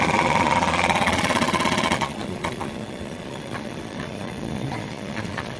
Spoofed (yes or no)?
yes